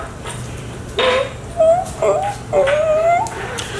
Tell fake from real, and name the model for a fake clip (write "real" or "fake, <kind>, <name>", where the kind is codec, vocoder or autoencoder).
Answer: real